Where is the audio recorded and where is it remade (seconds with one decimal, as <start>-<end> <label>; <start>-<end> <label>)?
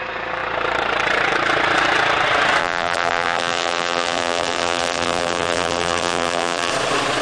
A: 0.0-2.6 recorded; 2.6-6.7 remade; 6.7-7.2 recorded